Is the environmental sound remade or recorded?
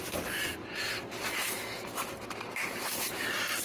recorded